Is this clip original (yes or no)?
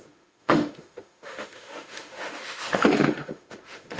no